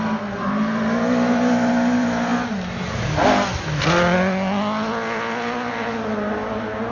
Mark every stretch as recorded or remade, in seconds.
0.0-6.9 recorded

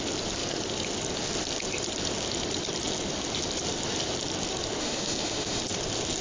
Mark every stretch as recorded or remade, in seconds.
0.0-4.8 recorded; 4.8-5.6 remade; 5.6-6.2 recorded

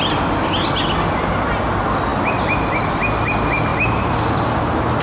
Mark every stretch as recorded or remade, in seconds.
0.0-5.0 recorded

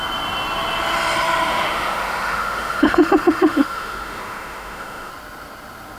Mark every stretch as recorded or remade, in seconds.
0.0-1.5 recorded; 1.5-5.1 remade; 5.1-6.0 recorded